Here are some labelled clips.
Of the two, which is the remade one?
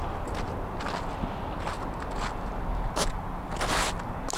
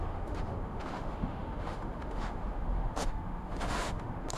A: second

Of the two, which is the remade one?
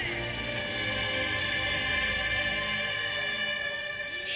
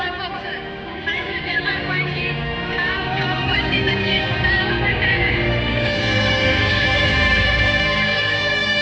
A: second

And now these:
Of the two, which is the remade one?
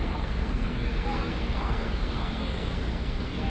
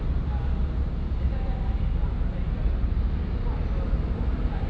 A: first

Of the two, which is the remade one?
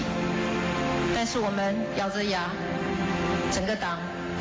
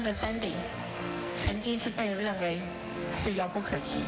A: second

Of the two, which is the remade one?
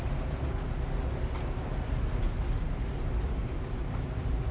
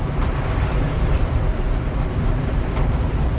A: second